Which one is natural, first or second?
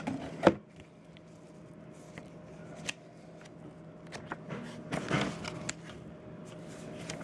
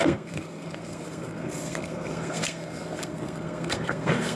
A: first